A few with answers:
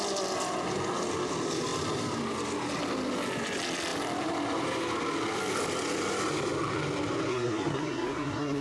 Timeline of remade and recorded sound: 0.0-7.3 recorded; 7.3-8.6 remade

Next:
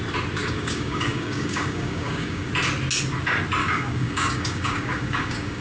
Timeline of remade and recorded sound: 0.0-0.4 recorded; 0.4-2.5 remade; 2.5-3.6 recorded; 3.6-5.6 remade

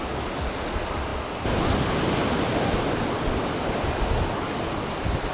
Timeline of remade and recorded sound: 0.0-5.3 recorded